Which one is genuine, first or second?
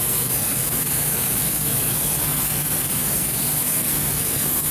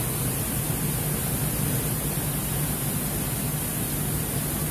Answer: second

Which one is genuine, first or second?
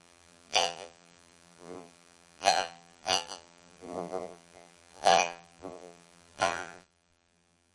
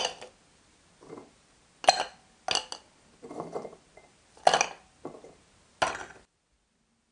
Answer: second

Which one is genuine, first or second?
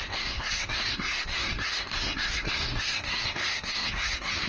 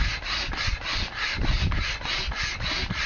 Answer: second